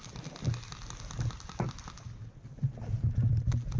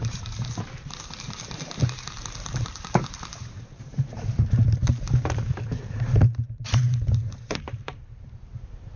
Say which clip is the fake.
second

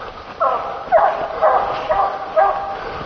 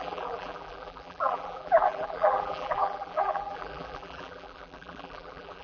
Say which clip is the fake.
second